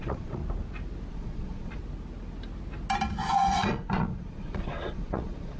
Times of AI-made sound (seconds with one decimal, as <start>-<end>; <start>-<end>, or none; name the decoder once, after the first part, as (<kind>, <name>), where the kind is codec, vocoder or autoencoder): 0.0-0.4 (vocoder, Vocos); 1.1-1.8; 3.2-5.6